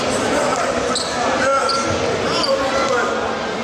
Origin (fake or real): real